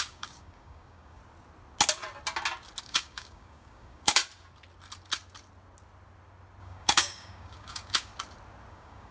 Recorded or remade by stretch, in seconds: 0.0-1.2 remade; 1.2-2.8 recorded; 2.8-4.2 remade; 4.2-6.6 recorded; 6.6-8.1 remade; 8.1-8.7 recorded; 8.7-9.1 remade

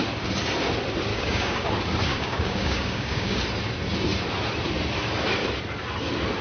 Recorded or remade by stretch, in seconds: 0.0-1.1 recorded; 1.1-1.7 remade; 1.7-2.1 recorded; 2.1-3.4 remade; 3.4-6.4 recorded

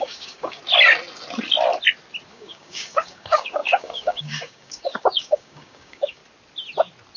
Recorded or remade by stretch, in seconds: 0.0-0.6 remade; 0.6-2.3 recorded; 2.3-6.2 remade; 6.2-7.2 recorded

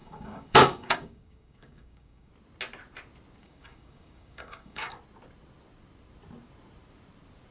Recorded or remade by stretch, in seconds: 0.0-2.3 remade; 2.3-3.4 recorded; 3.4-5.0 remade; 5.0-7.5 recorded

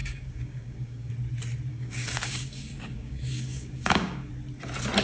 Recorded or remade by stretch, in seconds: 0.0-1.1 remade; 1.1-1.7 recorded; 1.7-4.3 remade; 4.3-5.0 recorded

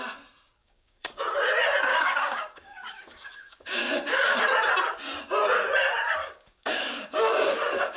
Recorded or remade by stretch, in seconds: 0.0-0.6 recorded; 0.6-1.2 remade; 1.2-1.9 recorded; 1.9-4.4 remade; 4.4-6.2 recorded; 6.2-8.0 remade